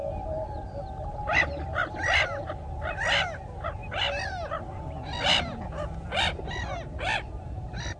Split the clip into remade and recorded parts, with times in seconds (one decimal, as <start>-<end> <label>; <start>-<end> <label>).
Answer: 0.0-2.5 remade; 2.5-8.0 recorded